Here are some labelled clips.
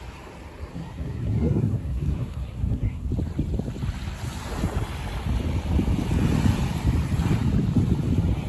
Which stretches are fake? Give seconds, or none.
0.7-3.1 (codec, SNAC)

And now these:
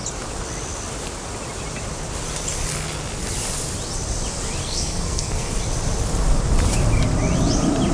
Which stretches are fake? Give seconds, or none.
4.6-5.5 (codec, SNAC)